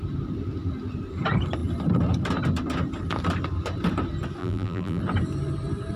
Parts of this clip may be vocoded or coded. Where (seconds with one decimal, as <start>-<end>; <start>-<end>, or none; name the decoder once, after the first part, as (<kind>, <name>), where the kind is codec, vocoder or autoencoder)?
4.4-5.0 (vocoder, BigVGAN v2)